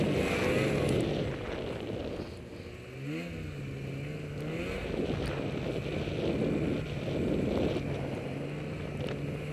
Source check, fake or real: real